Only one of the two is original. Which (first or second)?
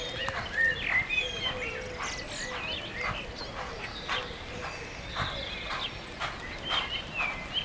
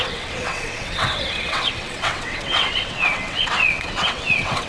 first